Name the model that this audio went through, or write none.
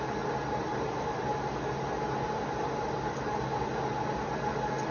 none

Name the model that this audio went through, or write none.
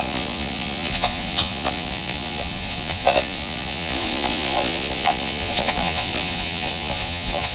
vocoder, Vocos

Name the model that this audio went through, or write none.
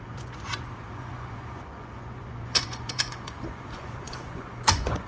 vocoder, Vocos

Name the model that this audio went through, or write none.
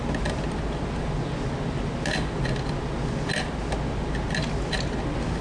none